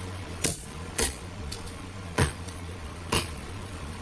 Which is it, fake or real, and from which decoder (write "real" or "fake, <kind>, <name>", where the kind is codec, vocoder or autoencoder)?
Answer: fake, vocoder, Vocos